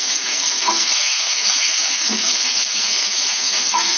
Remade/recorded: remade